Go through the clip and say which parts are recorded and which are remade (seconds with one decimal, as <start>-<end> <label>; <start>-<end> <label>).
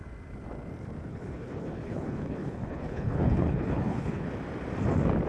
0.0-1.1 recorded; 1.1-4.3 remade; 4.3-5.3 recorded